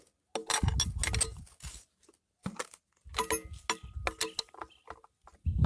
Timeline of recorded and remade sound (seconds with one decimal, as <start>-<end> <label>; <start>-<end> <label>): 0.0-5.7 recorded